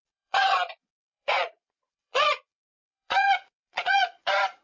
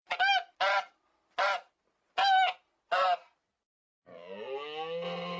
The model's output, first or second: first